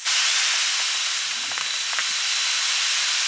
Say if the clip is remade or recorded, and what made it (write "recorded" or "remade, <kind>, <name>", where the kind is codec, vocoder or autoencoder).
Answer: recorded